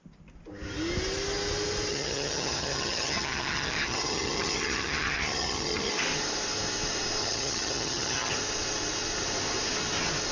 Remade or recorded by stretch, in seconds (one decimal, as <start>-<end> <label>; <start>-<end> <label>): 0.0-1.9 recorded; 1.9-5.9 remade; 5.9-7.2 recorded; 7.2-8.3 remade; 8.3-10.3 recorded